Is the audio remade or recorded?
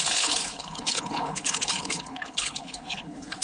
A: remade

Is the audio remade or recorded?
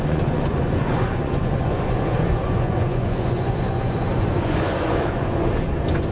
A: remade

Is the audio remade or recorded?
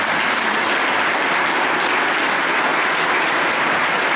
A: recorded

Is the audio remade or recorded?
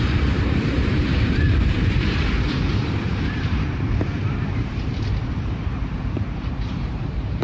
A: remade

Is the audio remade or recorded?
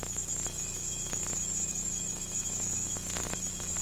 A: remade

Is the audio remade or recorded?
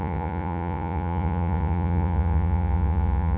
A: remade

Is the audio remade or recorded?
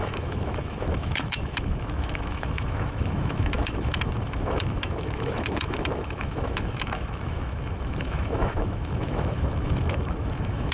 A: remade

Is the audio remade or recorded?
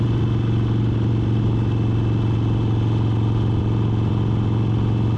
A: recorded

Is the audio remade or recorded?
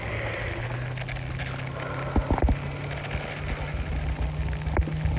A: recorded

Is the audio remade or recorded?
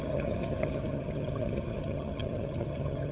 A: remade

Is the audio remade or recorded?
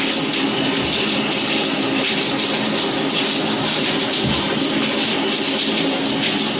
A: recorded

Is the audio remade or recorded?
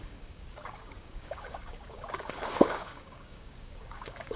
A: remade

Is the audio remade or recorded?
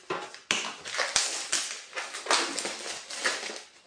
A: recorded